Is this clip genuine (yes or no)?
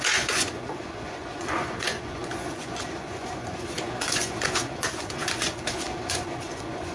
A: no